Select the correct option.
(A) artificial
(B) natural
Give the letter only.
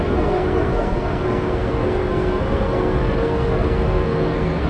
A